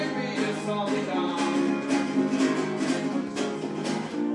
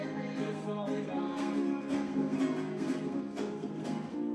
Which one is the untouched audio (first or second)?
first